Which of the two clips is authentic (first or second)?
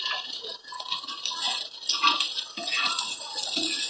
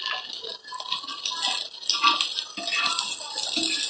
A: second